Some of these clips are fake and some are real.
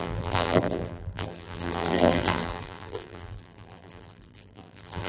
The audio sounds fake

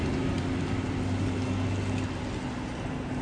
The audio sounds real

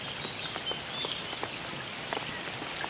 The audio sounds real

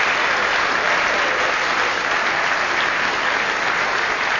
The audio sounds real